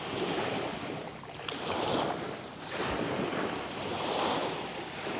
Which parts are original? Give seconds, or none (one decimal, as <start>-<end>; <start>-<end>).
0.0-5.2